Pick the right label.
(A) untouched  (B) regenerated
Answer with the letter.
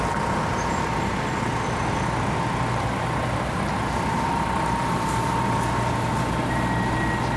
A